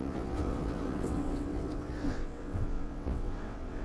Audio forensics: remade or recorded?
remade